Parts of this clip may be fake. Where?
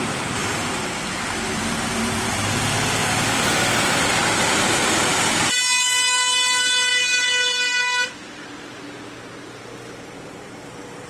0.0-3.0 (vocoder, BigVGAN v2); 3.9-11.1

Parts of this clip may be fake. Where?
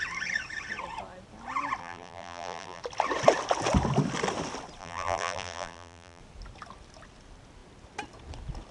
1.8-2.8 (vocoder, BigVGAN v2); 4.8-6.2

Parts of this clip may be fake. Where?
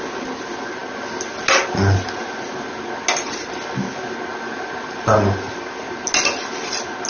4.3-6.0 (vocoder, BigVGAN v2)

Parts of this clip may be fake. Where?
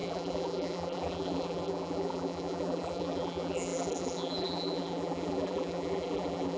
0.0-6.6 (vocoder, BigVGAN v2)